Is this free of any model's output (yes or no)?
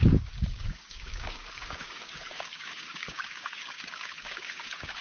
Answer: no